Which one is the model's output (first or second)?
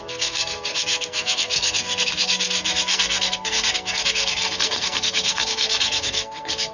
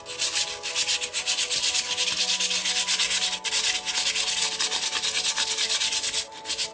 first